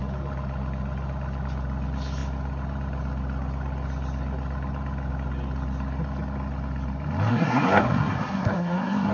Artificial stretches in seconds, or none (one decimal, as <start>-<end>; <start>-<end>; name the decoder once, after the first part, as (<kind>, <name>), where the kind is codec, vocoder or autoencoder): 7.3-9.1 (codec, SNAC)